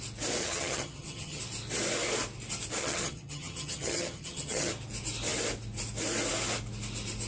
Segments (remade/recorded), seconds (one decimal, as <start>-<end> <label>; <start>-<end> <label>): 0.0-0.4 recorded; 0.4-1.4 remade; 1.4-2.8 recorded; 2.8-4.7 remade; 4.7-7.3 recorded